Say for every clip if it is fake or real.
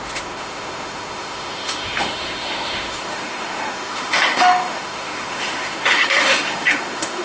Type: fake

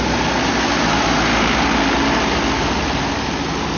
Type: real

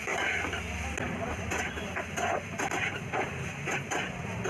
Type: real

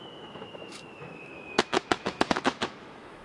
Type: fake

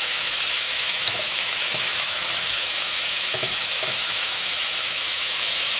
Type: fake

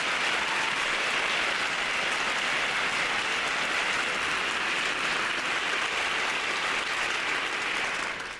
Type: real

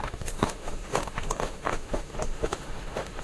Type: fake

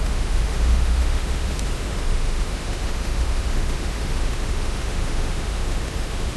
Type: fake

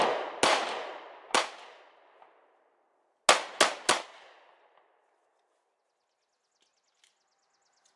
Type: real